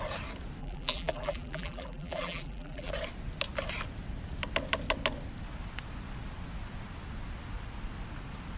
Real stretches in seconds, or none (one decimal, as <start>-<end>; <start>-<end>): 0.0-0.6; 2.9-8.6